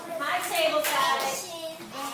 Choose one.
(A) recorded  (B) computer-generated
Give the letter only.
A